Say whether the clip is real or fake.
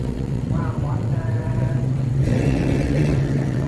fake